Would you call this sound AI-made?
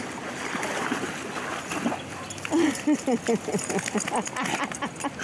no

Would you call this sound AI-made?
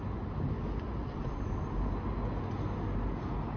no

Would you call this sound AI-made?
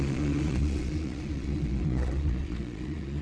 yes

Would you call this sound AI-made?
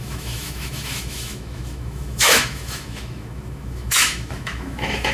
yes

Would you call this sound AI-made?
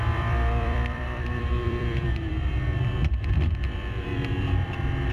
yes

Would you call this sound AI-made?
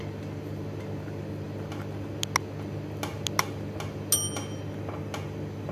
no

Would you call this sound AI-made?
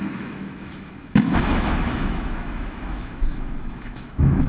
yes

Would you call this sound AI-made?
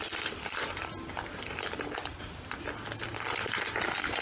no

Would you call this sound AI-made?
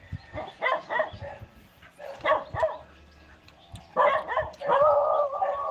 no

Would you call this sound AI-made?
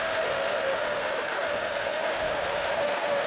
yes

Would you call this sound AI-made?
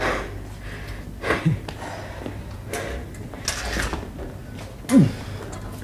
no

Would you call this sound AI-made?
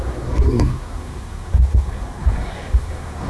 yes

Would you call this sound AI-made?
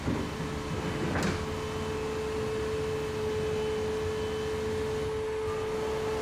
no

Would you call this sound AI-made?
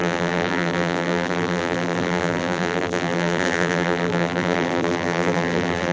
yes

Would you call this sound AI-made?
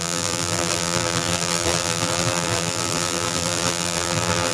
yes